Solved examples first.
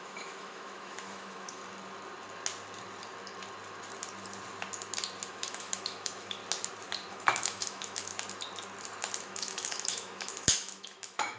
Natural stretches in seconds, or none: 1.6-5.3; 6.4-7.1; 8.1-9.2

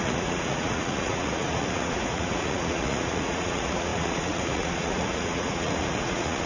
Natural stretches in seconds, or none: none

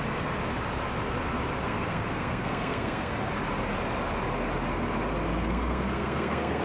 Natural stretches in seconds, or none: 0.0-1.6; 3.1-5.4

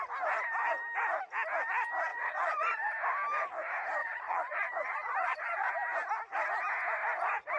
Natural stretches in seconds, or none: 0.0-2.1; 2.8-4.0; 5.7-7.6